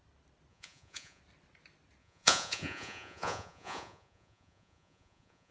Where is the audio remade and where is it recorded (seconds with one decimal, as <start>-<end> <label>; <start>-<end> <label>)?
0.0-0.5 recorded; 0.5-1.2 remade; 1.2-2.0 recorded; 2.0-5.5 remade

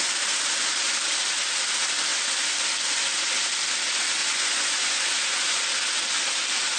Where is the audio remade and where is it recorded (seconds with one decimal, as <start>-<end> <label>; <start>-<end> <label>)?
0.0-4.2 recorded; 4.2-5.6 remade; 5.6-6.8 recorded